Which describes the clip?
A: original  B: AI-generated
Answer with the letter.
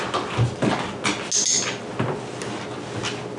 A